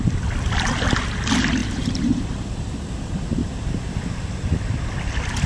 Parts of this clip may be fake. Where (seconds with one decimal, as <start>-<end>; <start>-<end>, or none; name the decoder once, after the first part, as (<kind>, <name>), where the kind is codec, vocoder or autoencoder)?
1.6-2.2 (vocoder, BigVGAN v2); 3.4-4.2